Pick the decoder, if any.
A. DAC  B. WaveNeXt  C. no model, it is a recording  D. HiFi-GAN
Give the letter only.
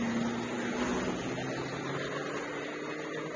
C